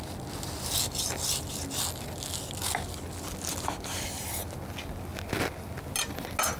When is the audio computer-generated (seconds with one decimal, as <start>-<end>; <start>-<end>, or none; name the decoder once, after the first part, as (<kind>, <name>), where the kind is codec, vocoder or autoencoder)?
none